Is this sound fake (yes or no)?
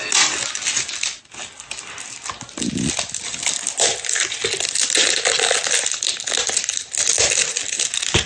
no